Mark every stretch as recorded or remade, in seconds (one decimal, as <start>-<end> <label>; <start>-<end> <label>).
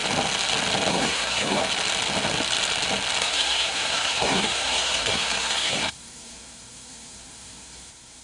0.0-0.9 recorded; 0.9-1.6 remade; 1.6-3.2 recorded; 3.2-8.2 remade